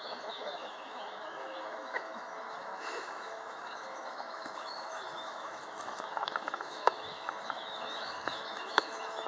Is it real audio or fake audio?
fake